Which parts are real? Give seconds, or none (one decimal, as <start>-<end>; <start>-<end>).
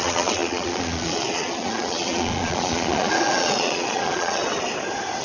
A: 4.4-5.2